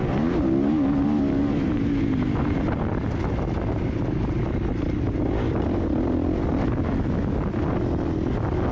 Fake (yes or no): no